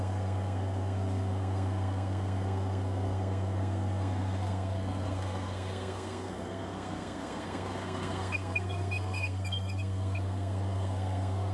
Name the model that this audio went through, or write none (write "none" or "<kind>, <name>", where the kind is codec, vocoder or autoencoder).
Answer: codec, SNAC